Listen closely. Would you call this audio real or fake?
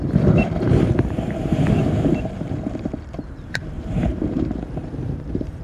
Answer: fake